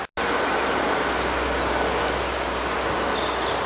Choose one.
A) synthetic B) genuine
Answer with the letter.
B